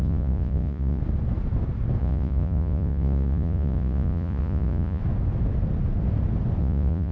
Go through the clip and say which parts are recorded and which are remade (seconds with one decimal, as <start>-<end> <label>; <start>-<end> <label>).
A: 0.0-1.0 remade; 1.0-2.0 recorded; 2.0-5.0 remade; 5.0-6.6 recorded; 6.6-7.1 remade